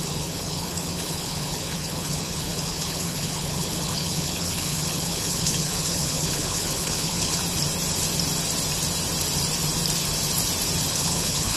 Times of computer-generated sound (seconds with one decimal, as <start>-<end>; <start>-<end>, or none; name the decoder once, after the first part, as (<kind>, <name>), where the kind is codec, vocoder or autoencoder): 0.0-7.4 (codec, HILCodec); 10.9-11.6